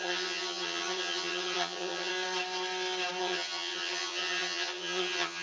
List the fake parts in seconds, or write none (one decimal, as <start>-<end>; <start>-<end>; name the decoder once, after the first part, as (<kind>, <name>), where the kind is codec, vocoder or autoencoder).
0.0-2.1 (vocoder, HiFi-GAN); 3.2-5.4